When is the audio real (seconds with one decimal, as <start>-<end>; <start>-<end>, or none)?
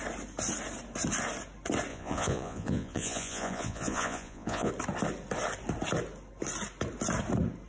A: 0.0-1.9; 4.7-7.7